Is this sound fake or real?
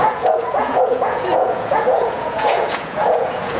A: fake